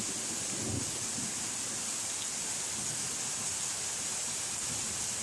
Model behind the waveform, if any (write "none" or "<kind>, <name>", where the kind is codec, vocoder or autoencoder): none